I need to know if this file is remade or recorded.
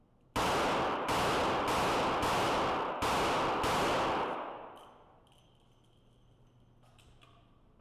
recorded